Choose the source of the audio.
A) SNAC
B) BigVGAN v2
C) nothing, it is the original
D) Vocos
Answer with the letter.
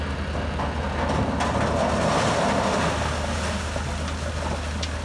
C